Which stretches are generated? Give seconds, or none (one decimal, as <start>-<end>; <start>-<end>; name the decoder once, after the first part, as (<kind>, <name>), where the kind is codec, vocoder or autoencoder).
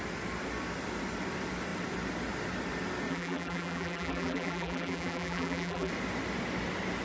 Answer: 3.1-5.9 (vocoder, BigVGAN v2)